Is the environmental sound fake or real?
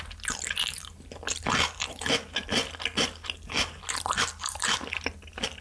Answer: real